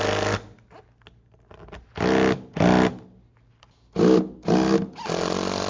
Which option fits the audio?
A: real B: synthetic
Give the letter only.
A